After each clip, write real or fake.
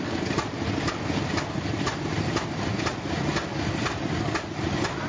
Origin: real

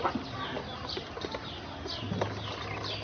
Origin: real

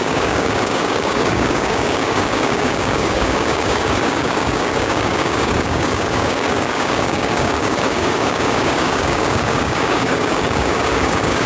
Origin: fake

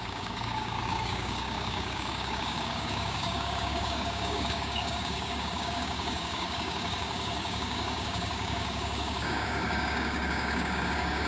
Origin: fake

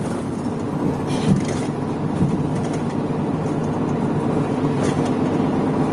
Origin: real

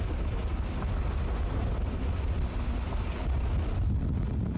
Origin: real